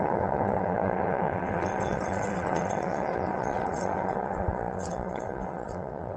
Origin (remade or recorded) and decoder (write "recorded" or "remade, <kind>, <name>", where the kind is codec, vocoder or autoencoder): remade, vocoder, WaveNeXt